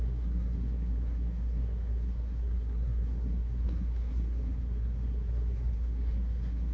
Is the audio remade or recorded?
remade